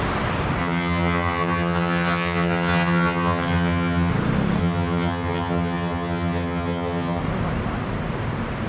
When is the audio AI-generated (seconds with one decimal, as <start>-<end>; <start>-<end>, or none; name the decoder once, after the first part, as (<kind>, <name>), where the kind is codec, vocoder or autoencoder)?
0.6-4.1 (vocoder, HiFi-GAN); 4.6-7.2